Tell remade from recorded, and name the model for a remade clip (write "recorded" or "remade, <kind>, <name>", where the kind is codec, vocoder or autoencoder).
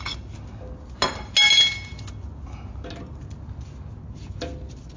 recorded